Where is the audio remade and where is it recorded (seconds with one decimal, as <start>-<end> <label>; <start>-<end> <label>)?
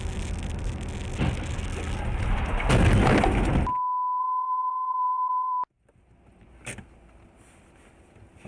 0.0-4.2 recorded; 4.2-5.5 remade; 5.5-8.5 recorded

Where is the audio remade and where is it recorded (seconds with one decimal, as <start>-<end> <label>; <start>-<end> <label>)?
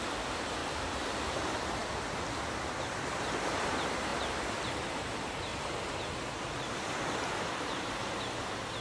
0.0-1.8 remade; 1.8-2.5 recorded; 2.5-4.1 remade; 4.1-4.7 recorded; 4.7-5.5 remade; 5.5-6.4 recorded; 6.4-8.8 remade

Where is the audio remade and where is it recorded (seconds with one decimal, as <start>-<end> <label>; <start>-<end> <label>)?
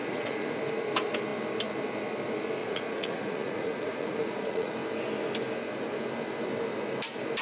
0.0-0.6 remade; 0.6-2.6 recorded; 2.6-4.7 remade; 4.7-7.4 recorded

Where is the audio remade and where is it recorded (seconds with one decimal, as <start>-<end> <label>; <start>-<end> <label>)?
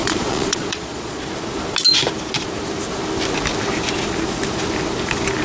0.0-1.2 remade; 1.2-5.4 recorded